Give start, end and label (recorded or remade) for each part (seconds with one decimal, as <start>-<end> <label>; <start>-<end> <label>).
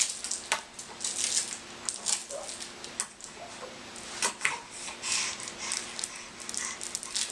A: 0.0-7.3 recorded